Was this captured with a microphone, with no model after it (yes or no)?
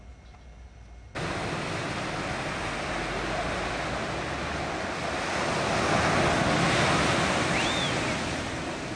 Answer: yes